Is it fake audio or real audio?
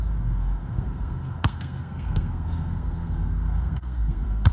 fake